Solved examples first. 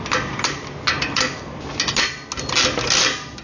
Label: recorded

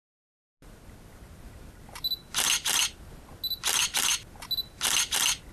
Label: recorded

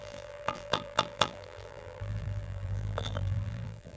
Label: remade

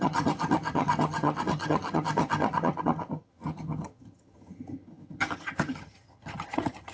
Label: remade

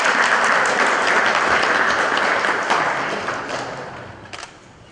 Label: recorded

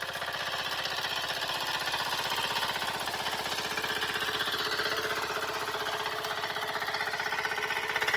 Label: recorded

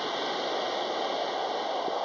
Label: recorded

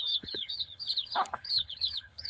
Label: remade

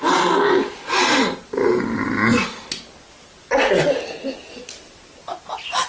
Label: recorded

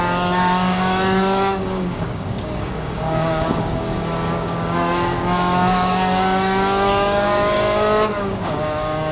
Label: remade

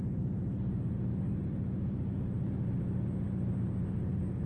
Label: recorded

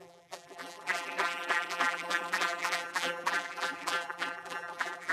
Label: remade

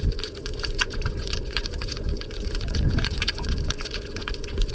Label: remade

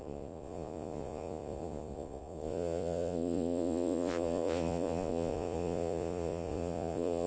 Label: remade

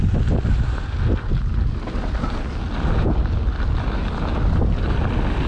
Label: recorded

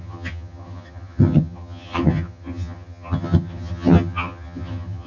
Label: remade